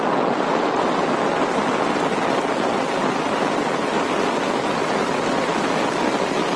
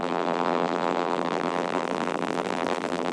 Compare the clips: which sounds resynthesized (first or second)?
second